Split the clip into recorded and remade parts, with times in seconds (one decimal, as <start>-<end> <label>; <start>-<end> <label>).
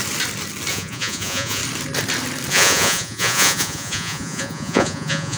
0.0-0.7 recorded; 0.7-1.6 remade; 1.6-2.5 recorded; 2.5-5.4 remade